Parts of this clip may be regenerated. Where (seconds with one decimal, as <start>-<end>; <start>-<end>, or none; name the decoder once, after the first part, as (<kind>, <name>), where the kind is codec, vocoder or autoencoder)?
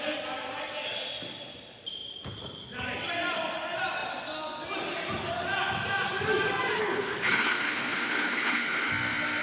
6.8-8.9 (codec, HILCodec)